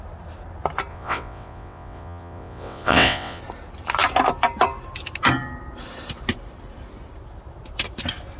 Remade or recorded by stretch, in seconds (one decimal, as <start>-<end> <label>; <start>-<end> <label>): 0.0-0.9 recorded; 0.9-3.4 remade; 3.4-8.4 recorded